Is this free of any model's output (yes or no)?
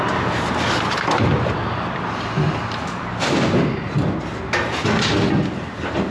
yes